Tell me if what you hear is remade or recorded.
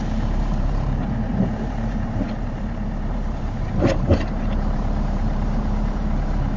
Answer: remade